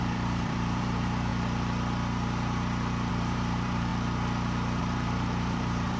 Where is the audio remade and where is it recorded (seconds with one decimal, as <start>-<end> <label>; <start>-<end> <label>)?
0.0-1.3 remade; 1.3-3.1 recorded; 3.1-3.9 remade; 3.9-4.8 recorded; 4.8-6.0 remade